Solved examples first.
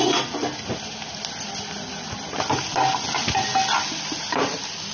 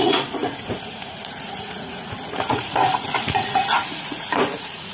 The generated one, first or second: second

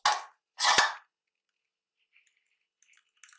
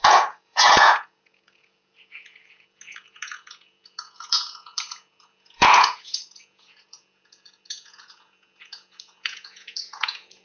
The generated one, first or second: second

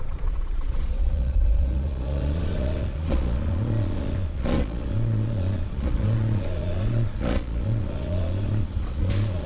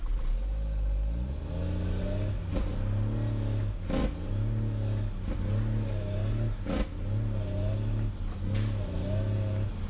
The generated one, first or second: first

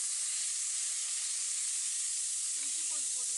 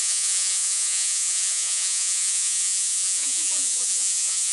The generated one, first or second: second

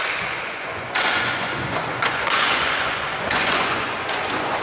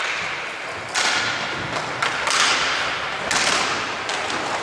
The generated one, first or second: first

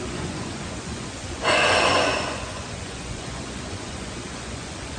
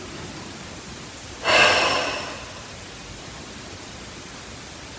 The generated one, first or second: first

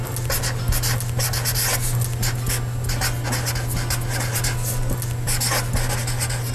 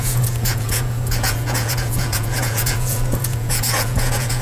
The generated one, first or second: second